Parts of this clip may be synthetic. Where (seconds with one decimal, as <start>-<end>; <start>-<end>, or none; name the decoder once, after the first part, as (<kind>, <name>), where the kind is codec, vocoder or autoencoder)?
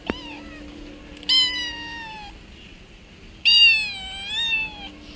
none